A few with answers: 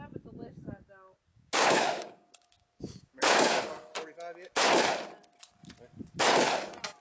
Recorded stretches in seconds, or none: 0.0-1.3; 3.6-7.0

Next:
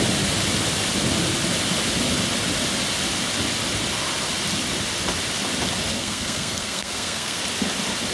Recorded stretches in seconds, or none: 0.0-5.9; 7.4-8.1

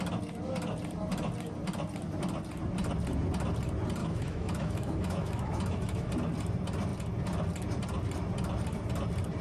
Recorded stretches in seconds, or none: 0.0-4.0; 6.1-9.4

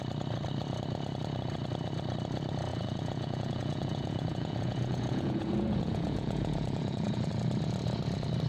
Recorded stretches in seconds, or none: 0.0-2.7; 7.3-8.5

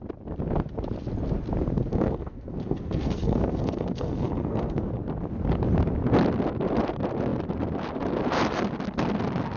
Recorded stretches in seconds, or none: 0.0-1.9; 4.9-9.6

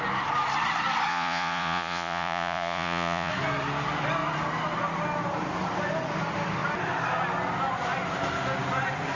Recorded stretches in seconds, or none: 0.0-1.1; 3.3-9.1